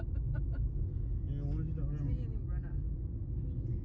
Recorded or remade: recorded